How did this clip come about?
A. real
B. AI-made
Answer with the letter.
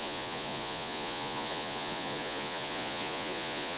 B